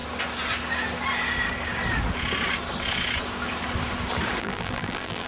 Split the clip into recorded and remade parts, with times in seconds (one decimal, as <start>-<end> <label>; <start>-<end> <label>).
0.0-4.4 recorded; 4.4-5.3 remade